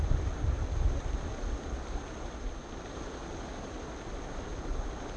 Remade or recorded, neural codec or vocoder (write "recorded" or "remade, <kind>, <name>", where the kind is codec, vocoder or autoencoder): recorded